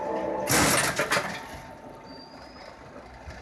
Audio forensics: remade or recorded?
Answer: recorded